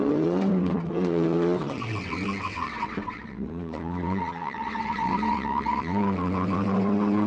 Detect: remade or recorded remade